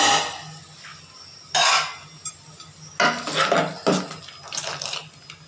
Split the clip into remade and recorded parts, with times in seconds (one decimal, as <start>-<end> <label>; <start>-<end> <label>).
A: 0.0-5.5 recorded

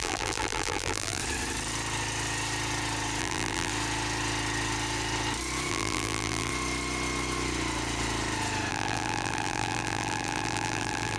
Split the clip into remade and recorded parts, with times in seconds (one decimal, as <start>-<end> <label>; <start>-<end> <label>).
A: 0.0-1.2 remade; 1.2-3.2 recorded; 3.2-3.7 remade; 3.7-5.7 recorded; 5.7-6.5 remade; 6.5-8.7 recorded; 8.7-11.2 remade